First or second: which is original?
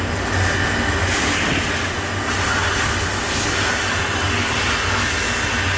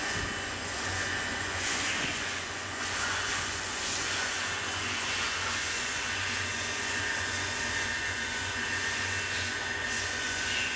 first